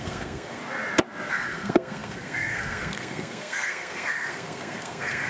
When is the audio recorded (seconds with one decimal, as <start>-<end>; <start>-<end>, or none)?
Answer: 0.6-1.3